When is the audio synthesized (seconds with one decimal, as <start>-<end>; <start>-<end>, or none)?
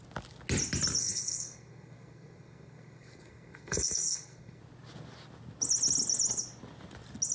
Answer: 1.0-4.6